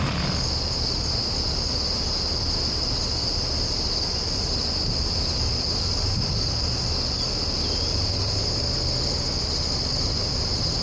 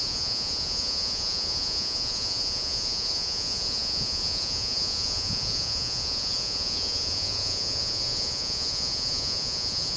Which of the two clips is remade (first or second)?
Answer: second